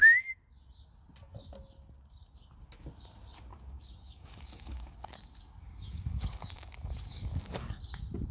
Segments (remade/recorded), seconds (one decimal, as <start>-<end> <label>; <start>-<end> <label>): 0.0-3.5 recorded; 3.5-7.8 remade; 7.8-8.3 recorded